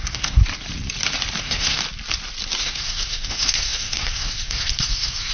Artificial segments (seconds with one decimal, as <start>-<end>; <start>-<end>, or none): 0.0-0.4; 1.4-1.8; 2.6-5.3